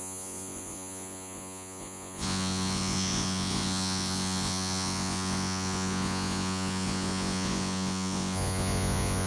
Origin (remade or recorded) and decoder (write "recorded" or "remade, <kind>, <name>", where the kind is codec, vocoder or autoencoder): remade, vocoder, Vocos